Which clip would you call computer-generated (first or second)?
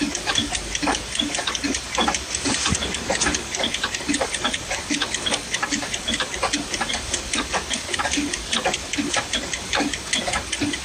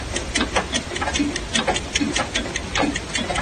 first